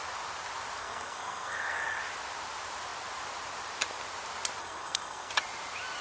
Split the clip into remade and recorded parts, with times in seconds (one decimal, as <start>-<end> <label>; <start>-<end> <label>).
0.0-0.8 recorded; 0.8-2.0 remade; 2.0-4.6 recorded; 4.6-5.3 remade; 5.3-6.0 recorded